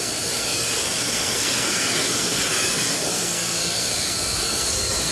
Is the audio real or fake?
fake